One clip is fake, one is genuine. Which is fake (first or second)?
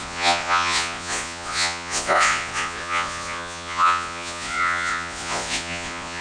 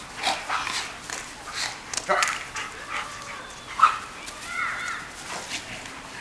first